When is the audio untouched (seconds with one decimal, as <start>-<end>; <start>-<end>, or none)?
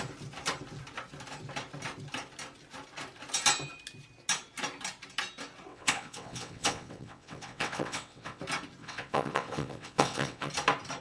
0.0-5.7; 8.4-8.8; 10.5-11.0